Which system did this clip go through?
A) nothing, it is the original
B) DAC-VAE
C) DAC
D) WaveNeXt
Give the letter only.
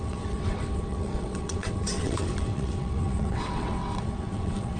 D